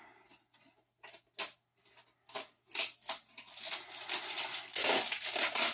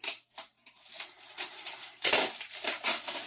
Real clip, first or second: first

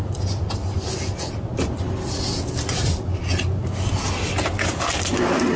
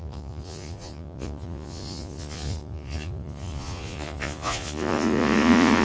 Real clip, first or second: first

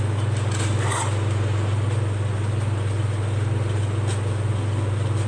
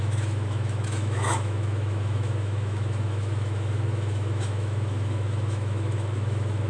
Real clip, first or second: first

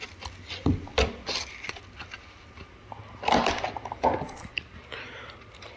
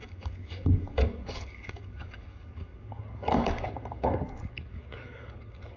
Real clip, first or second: first